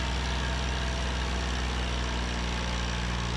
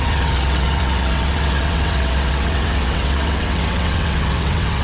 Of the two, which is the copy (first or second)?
second